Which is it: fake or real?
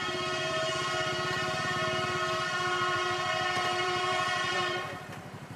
fake